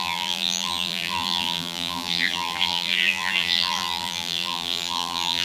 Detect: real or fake fake